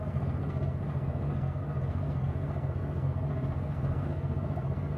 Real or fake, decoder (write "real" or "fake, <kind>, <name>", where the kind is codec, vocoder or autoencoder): fake, codec, SNAC